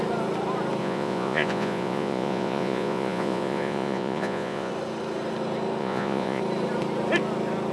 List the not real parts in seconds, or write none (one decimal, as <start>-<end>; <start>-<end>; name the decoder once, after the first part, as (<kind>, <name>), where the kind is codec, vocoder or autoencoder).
0.8-4.7 (vocoder, Vocos); 5.8-6.4